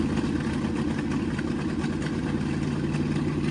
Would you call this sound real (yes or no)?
yes